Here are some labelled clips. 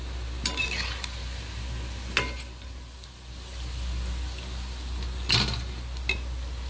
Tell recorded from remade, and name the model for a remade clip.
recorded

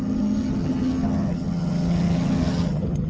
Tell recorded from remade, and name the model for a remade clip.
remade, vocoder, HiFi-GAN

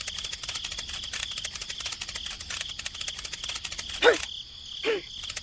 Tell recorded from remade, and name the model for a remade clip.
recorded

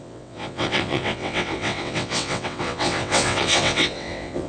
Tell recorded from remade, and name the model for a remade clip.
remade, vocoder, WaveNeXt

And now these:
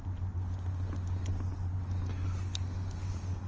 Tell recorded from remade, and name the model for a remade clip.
recorded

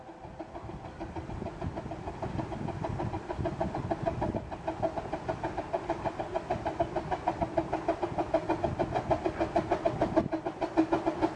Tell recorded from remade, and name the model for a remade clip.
recorded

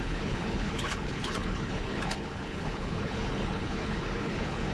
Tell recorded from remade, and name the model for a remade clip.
remade, codec, HILCodec